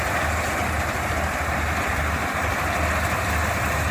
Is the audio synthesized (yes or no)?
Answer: no